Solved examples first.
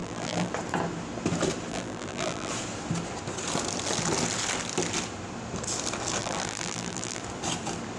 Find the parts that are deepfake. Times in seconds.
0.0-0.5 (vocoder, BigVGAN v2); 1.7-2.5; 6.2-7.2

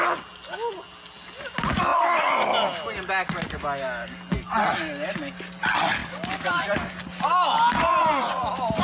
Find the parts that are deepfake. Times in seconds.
6.0-6.9 (vocoder, BigVGAN v2)

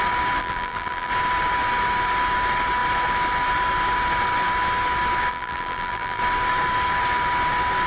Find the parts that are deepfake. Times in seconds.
0.4-1.1 (vocoder, BigVGAN v2); 5.3-6.2

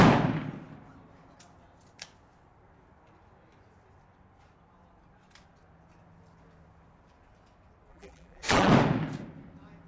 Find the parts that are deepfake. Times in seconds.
7.9-8.7 (vocoder, BigVGAN v2)

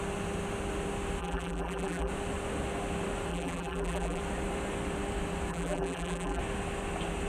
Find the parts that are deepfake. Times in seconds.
1.2-2.1 (vocoder, BigVGAN v2); 3.3-4.2; 5.5-6.4

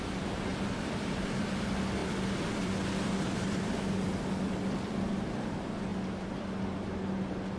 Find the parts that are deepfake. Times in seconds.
0.5-1.6 (vocoder, BigVGAN v2); 2.0-5.5